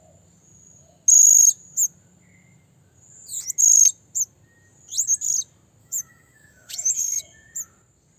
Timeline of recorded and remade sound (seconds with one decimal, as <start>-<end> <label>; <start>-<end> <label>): 0.0-5.8 recorded; 5.8-7.2 remade; 7.2-8.2 recorded